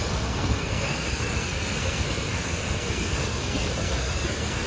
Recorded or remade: remade